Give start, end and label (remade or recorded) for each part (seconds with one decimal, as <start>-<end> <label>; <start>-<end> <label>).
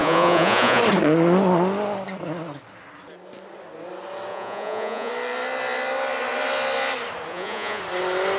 0.0-0.8 remade; 0.8-4.3 recorded; 4.3-5.1 remade; 5.1-7.3 recorded; 7.3-7.8 remade; 7.8-8.4 recorded